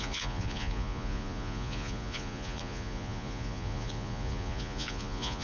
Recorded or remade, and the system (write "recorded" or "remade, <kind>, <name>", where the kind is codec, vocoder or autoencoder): remade, vocoder, Vocos